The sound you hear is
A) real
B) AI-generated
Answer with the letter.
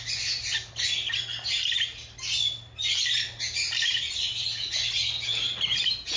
A